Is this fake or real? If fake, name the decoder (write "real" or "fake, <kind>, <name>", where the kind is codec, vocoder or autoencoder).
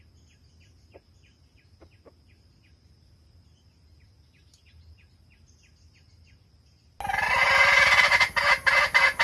real